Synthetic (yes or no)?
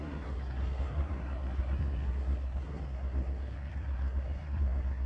yes